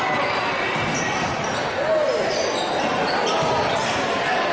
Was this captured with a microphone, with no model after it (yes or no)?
yes